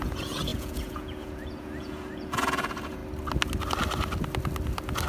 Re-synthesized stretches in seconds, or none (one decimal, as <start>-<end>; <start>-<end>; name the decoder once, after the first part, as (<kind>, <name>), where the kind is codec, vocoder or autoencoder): 0.0-3.0 (vocoder, Vocos)